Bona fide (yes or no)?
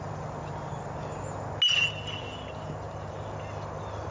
yes